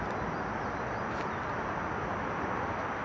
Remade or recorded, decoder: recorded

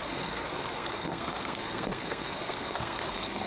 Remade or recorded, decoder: remade, codec, SNAC